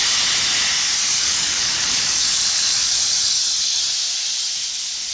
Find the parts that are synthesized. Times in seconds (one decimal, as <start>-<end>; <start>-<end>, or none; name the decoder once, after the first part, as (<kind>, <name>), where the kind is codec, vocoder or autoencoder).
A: 1.1-3.8 (codec, DAC)